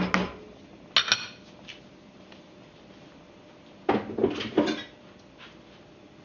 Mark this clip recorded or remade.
recorded